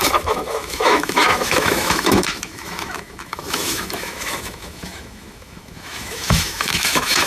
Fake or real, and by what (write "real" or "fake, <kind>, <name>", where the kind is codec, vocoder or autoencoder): fake, autoencoder, DAC-VAE